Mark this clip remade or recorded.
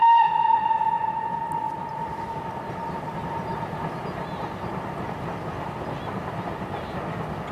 recorded